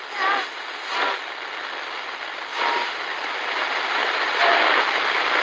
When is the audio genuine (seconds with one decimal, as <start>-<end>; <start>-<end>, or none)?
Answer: 0.0-2.5; 3.6-4.0; 4.5-5.4